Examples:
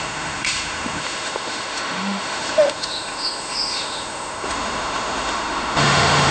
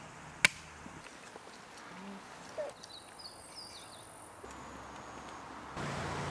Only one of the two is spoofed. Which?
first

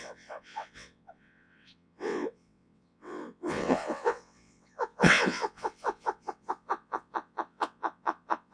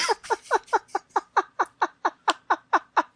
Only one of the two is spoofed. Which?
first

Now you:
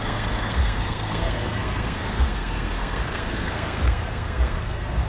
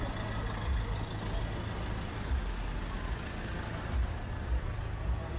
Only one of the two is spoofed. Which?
first